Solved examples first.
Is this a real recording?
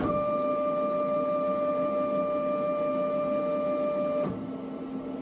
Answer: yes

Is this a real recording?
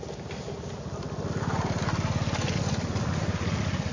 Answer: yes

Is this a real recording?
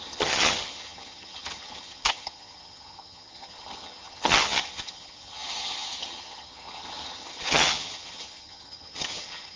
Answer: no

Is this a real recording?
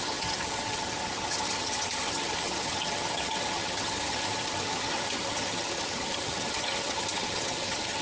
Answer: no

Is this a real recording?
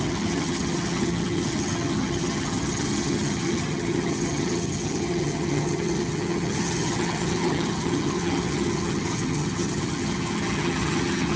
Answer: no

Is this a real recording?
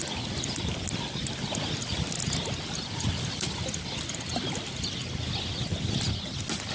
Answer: yes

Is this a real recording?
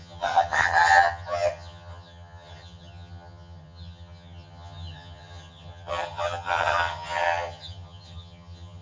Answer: no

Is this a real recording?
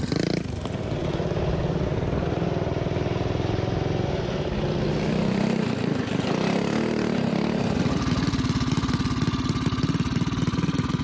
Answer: yes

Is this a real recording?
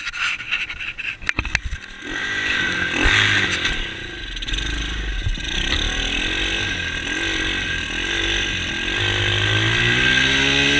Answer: yes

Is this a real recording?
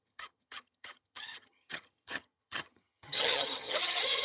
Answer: no